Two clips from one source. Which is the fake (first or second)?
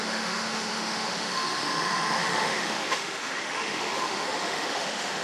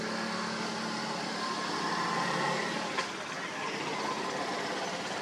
first